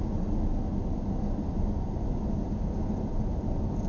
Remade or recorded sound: recorded